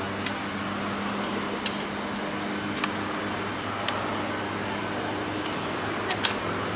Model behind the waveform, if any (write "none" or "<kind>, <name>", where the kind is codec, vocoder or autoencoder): none